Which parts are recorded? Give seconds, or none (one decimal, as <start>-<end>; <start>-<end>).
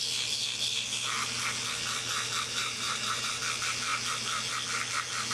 0.0-2.6; 3.4-5.3